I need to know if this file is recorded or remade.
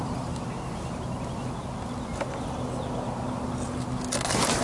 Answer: recorded